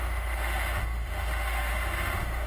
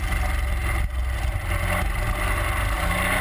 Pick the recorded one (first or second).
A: second